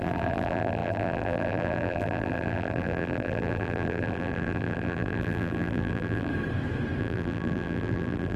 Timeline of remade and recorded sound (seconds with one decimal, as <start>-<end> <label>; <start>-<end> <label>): 0.0-6.3 remade; 6.3-7.0 recorded; 7.0-8.4 remade